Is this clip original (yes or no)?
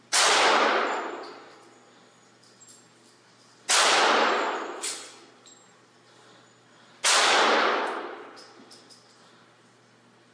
yes